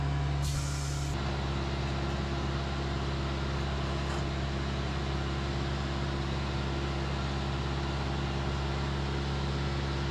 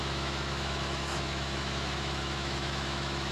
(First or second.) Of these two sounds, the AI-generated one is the second